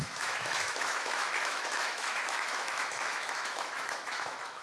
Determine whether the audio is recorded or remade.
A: remade